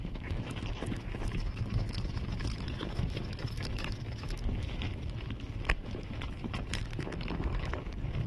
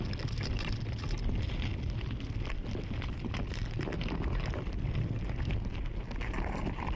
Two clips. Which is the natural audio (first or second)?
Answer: second